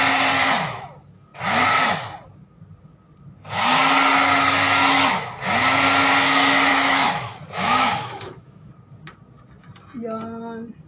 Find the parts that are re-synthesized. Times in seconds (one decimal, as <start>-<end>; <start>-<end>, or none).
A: 6.7-8.7